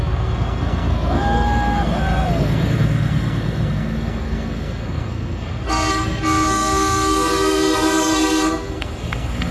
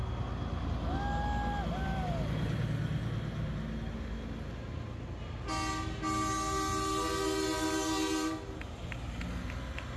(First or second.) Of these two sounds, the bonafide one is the second